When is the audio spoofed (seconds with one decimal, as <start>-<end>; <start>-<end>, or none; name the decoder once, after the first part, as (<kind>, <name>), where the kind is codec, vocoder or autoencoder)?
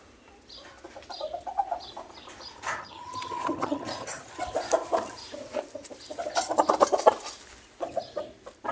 2.8-4.4 (vocoder, HiFi-GAN)